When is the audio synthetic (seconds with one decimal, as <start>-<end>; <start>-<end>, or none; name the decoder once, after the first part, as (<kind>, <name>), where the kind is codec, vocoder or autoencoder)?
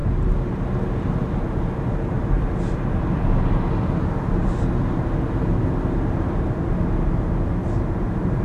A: 0.0-0.6 (vocoder, BigVGAN v2); 1.2-2.6; 7.6-8.4